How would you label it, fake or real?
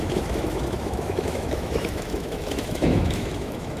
fake